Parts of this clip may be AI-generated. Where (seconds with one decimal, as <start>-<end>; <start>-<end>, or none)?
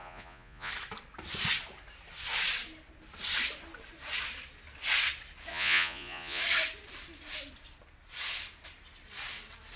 0.0-0.7; 5.5-6.4